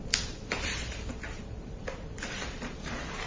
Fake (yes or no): yes